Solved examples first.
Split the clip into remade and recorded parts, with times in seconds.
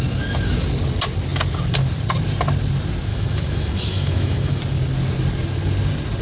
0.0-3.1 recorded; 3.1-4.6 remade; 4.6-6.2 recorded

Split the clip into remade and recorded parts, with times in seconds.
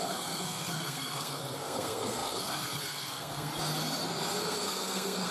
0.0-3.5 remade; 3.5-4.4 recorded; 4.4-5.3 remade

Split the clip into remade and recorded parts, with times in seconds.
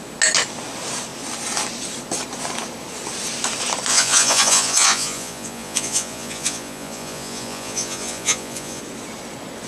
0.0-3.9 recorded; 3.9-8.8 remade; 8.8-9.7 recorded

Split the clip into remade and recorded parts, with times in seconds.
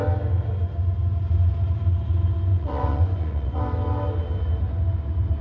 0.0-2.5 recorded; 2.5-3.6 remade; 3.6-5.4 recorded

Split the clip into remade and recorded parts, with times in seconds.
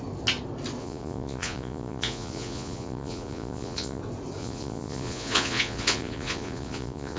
0.0-0.8 recorded; 0.8-4.0 remade; 4.0-4.4 recorded; 4.4-7.2 remade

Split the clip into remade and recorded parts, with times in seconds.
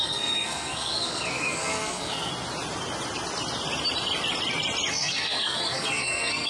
0.0-2.3 remade; 2.3-4.9 recorded; 4.9-6.5 remade